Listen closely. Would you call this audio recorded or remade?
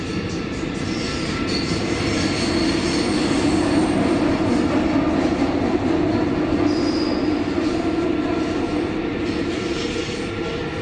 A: recorded